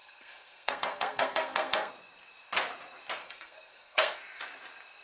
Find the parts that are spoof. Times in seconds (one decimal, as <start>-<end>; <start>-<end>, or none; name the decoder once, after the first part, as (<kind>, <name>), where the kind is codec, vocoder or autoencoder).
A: 0.0-1.9 (codec, SNAC); 3.2-4.2